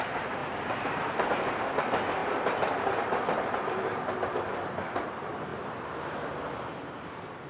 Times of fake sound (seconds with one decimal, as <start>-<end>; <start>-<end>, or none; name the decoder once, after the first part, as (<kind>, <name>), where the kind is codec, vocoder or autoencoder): 2.2-4.2 (vocoder, BigVGAN v2); 5.5-6.3